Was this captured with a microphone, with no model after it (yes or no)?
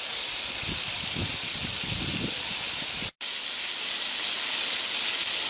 yes